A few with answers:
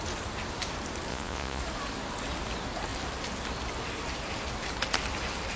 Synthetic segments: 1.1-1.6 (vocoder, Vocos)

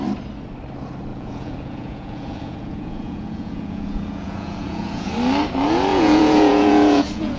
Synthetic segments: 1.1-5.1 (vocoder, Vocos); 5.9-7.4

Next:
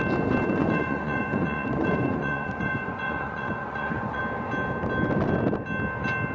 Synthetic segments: 0.4-4.2 (vocoder, Vocos)